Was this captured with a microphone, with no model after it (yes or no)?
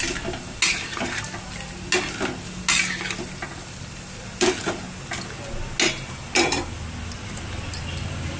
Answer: yes